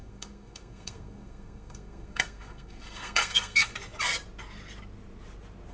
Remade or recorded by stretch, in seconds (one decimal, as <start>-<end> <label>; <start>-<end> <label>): 0.0-3.7 remade; 3.7-5.7 recorded